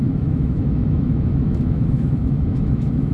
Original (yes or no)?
no